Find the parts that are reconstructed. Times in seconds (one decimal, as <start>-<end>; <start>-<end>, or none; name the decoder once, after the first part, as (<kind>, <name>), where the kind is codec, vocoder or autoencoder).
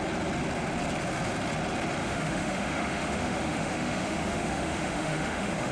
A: 2.0-5.7 (autoencoder, DAC-VAE)